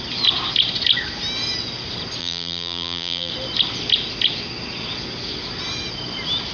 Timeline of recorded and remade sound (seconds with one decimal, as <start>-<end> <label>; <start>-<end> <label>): 0.0-2.2 recorded; 2.2-3.3 remade; 3.3-6.5 recorded